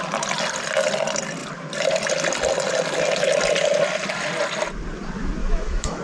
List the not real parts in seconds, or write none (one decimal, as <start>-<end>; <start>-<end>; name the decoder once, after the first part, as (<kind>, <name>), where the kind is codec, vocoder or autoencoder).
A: 5.4-6.0 (autoencoder, DAC-VAE)